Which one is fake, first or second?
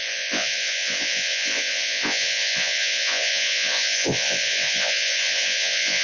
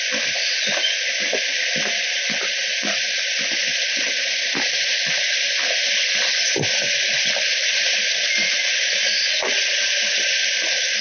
first